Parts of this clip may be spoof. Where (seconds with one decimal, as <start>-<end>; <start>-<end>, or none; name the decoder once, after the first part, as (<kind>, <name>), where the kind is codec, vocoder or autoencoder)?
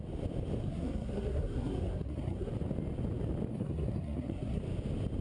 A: 0.6-2.5 (codec, SNAC); 3.5-4.6